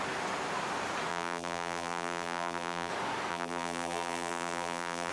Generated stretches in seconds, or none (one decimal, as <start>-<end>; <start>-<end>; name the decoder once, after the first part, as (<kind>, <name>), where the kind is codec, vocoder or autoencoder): 1.1-2.9 (vocoder, BigVGAN v2); 3.3-5.1